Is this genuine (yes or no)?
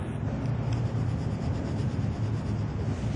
yes